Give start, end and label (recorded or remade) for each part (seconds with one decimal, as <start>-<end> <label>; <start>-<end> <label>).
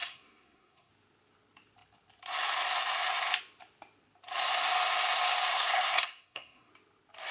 0.0-0.9 remade; 0.9-5.5 recorded; 5.5-6.7 remade; 6.7-7.3 recorded